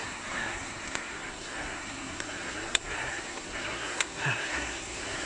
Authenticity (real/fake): fake